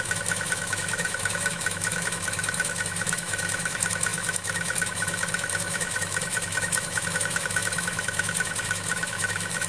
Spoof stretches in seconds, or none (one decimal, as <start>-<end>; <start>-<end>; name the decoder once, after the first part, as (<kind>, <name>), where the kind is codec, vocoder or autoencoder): 0.0-9.7 (autoencoder, DAC-VAE)